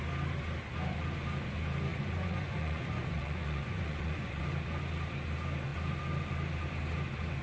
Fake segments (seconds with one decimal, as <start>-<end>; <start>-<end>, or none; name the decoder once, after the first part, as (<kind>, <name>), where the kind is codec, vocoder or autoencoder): 1.9-4.5 (vocoder, Vocos)